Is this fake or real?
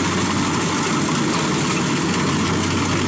real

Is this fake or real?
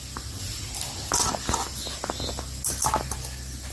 real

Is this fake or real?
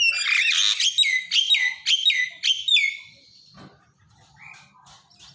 real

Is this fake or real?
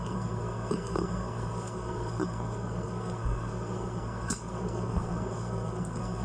fake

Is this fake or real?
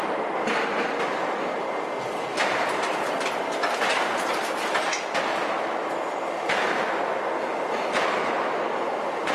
real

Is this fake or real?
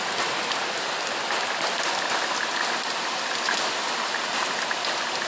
real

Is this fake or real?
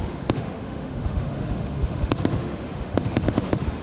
fake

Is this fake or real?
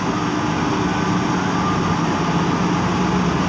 real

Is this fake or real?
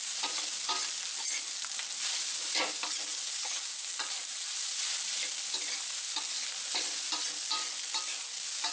real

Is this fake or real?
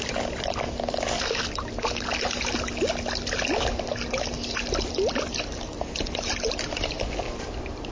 real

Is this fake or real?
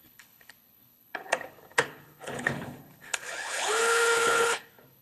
fake